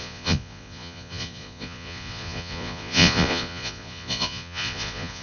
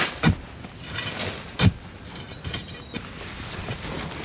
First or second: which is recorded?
second